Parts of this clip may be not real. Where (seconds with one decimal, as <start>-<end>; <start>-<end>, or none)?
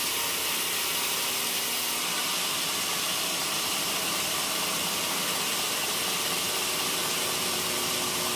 none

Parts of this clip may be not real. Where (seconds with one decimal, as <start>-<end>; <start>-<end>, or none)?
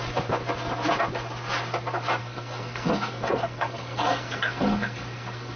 2.2-5.6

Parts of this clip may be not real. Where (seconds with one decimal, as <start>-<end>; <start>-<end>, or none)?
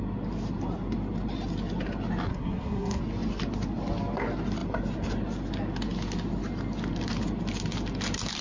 2.3-3.0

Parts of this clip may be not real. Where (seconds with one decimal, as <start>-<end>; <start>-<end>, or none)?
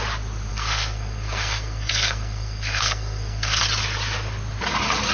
0.5-3.6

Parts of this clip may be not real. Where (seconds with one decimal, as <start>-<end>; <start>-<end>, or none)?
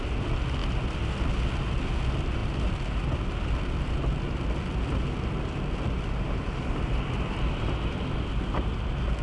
none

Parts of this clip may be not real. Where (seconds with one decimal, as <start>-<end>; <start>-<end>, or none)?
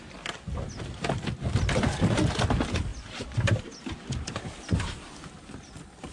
none